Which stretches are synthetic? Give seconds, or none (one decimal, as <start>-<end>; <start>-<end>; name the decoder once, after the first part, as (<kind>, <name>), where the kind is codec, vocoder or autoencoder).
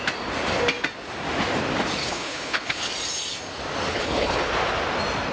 2.0-2.9 (codec, HILCodec); 3.9-4.5